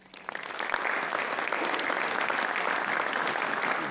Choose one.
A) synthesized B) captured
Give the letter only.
B